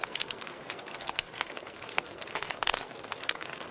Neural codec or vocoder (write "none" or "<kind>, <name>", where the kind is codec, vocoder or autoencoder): codec, SNAC